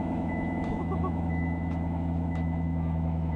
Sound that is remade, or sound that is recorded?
remade